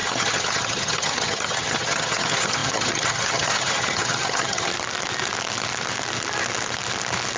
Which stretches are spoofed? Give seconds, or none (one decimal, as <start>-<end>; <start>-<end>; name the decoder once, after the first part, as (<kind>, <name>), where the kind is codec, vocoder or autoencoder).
0.0-4.7 (vocoder, HiFi-GAN)